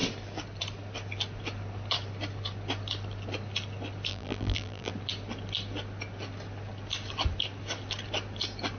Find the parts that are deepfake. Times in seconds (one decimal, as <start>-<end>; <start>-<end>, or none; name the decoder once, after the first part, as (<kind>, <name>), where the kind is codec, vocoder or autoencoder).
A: 4.1-4.9 (vocoder, BigVGAN v2)